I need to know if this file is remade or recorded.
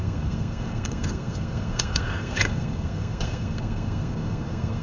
remade